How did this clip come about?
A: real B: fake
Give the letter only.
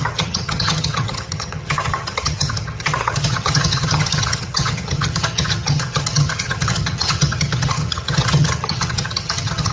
B